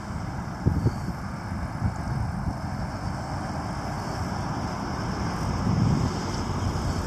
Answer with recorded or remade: recorded